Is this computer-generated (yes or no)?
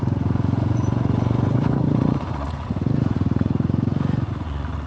yes